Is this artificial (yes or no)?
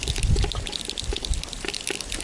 no